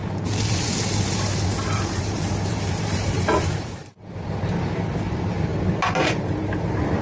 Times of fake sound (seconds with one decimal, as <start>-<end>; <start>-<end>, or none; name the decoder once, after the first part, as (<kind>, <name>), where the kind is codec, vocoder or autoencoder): 2.0-3.8 (vocoder, BigVGAN v2); 4.4-5.5; 6.0-7.0